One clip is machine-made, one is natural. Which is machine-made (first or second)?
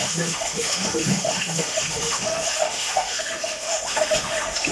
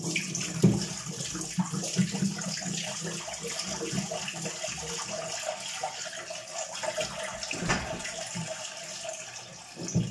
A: first